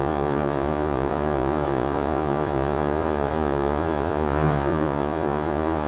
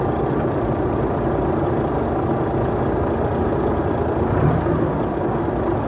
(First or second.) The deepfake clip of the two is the first